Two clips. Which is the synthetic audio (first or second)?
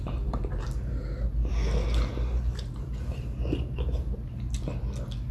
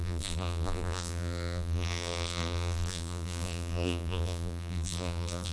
second